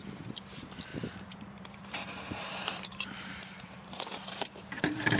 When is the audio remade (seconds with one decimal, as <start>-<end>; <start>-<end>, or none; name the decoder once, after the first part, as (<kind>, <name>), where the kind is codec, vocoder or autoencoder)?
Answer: 0.9-4.0 (vocoder, BigVGAN v2)